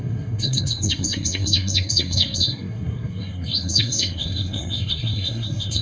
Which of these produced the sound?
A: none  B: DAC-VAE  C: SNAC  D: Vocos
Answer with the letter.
C